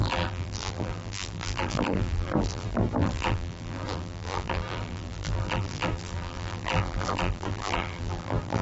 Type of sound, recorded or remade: remade